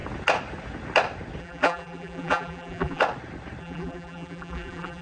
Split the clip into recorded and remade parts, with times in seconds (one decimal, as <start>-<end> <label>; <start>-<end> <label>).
0.0-1.4 recorded; 1.4-3.0 remade; 3.0-3.6 recorded; 3.6-5.0 remade